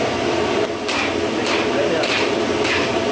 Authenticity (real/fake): fake